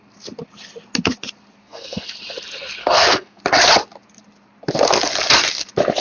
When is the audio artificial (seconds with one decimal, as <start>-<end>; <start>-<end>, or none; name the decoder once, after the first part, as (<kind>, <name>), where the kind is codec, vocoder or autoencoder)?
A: 1.6-2.1 (codec, SNAC); 2.8-3.4

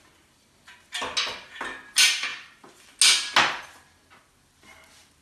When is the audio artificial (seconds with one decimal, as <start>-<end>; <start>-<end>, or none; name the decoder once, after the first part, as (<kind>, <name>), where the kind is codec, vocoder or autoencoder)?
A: none

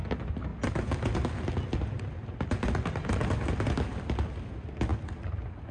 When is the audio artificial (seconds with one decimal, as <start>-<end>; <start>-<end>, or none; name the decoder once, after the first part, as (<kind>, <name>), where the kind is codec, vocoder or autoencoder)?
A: none

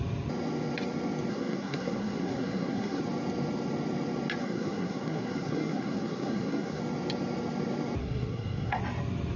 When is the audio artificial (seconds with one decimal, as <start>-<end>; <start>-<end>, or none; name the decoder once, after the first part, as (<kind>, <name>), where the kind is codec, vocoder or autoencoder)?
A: 1.3-3.0 (codec, SNAC); 4.4-6.8; 8.0-8.8